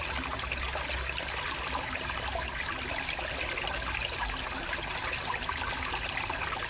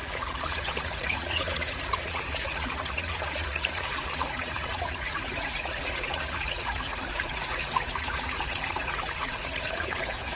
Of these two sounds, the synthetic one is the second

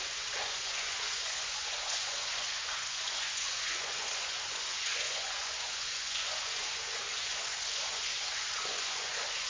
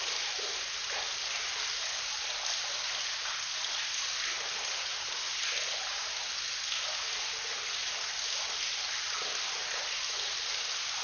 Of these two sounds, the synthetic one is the first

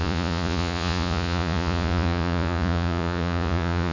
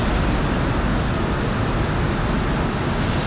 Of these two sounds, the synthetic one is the first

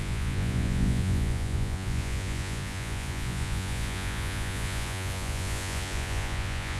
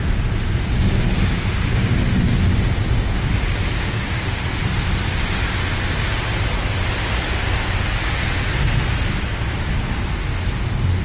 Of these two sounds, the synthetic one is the first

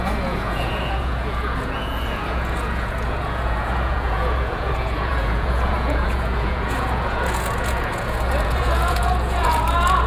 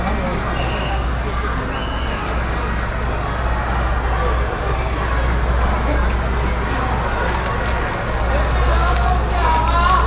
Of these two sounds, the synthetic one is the first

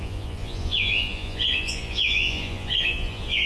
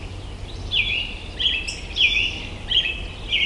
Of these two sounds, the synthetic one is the first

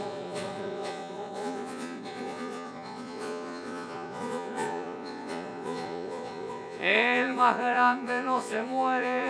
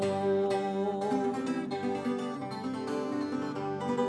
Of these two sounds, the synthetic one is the first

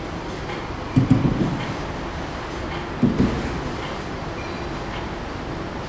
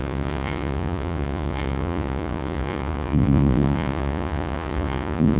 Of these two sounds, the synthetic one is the second